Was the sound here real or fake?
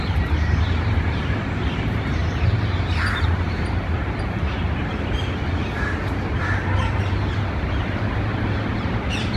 fake